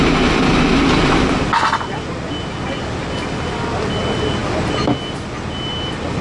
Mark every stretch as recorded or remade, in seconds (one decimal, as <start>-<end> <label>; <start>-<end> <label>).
0.0-6.2 recorded